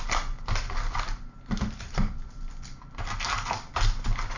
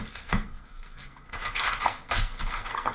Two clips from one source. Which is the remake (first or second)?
second